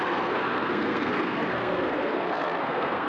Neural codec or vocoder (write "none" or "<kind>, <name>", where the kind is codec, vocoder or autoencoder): codec, SNAC